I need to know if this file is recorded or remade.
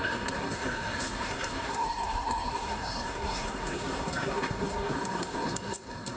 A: remade